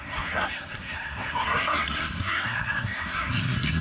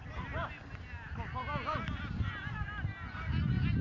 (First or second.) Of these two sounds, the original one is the second